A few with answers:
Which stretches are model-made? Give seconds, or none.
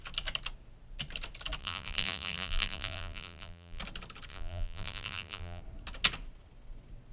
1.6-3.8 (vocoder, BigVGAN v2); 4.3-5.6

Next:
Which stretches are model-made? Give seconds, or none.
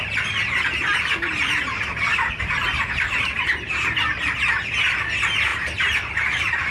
2.1-3.4 (vocoder, BigVGAN v2); 5.5-6.7